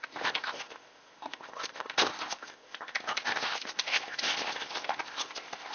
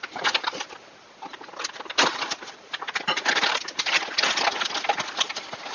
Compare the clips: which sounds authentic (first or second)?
second